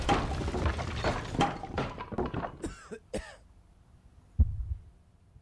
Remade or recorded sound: recorded